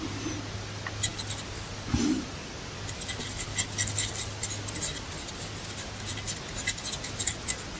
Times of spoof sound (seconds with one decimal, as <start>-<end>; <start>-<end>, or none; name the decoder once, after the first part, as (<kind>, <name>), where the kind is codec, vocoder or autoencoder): none